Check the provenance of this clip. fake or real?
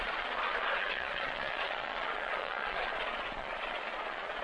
fake